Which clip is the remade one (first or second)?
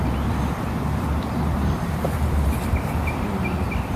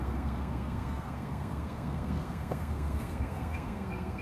second